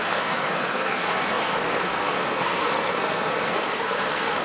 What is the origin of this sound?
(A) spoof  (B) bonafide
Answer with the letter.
A